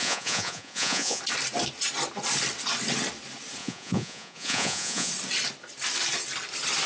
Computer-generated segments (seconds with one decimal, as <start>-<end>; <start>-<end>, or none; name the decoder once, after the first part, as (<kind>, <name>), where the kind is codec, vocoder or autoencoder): 0.0-1.2 (vocoder, Vocos); 3.6-5.1